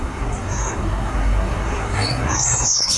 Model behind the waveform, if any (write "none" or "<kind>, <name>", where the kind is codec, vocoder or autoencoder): codec, SNAC